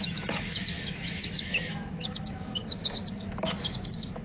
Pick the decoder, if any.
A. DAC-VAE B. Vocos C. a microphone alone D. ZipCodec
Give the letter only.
A